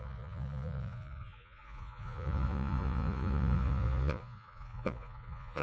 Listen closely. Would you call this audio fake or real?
fake